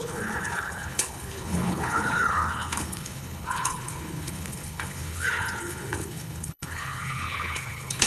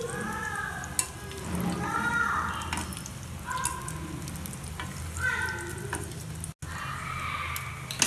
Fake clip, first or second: first